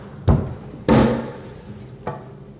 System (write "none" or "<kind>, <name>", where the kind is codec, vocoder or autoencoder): none